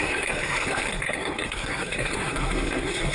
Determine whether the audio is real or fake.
fake